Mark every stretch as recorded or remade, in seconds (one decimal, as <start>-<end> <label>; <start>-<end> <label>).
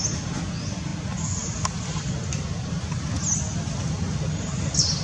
0.0-5.0 recorded